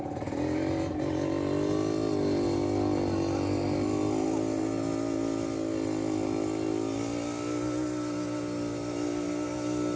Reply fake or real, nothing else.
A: real